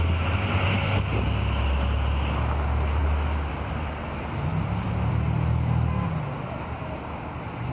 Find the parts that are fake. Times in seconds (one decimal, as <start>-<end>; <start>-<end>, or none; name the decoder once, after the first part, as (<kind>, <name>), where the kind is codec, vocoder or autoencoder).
none